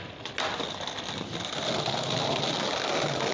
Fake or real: real